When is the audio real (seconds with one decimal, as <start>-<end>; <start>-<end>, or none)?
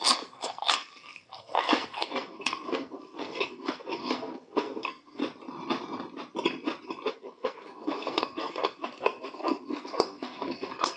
5.2-7.1